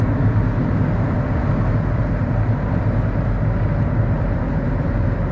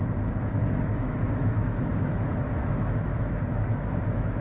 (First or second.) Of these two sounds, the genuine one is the first